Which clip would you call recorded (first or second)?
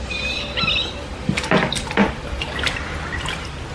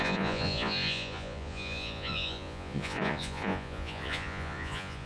first